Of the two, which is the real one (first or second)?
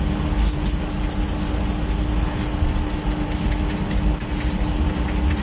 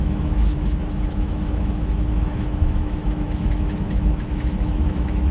first